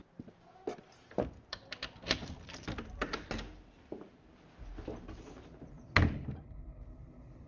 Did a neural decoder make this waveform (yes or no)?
no